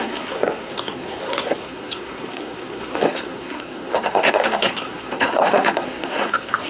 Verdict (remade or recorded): remade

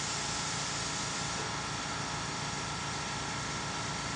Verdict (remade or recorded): recorded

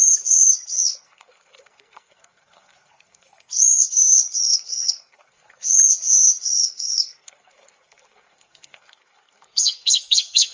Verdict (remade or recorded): remade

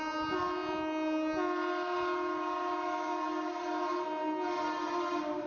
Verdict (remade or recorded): recorded